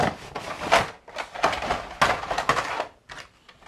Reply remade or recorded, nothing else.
recorded